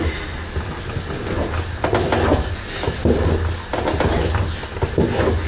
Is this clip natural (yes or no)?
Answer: yes